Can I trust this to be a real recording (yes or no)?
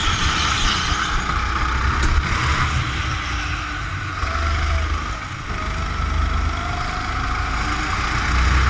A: yes